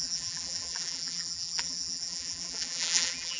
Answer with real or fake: fake